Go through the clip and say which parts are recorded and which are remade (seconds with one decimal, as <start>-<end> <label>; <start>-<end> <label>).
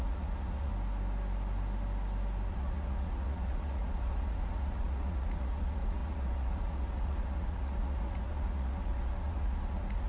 0.0-0.7 remade; 0.7-2.5 recorded; 2.5-10.1 remade